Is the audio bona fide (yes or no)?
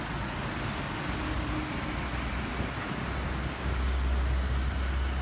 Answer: yes